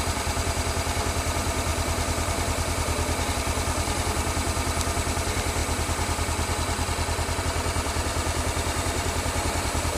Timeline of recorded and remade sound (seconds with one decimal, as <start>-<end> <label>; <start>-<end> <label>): 0.0-1.7 remade; 1.7-3.3 recorded; 3.3-5.6 remade; 5.6-7.4 recorded; 7.4-10.0 remade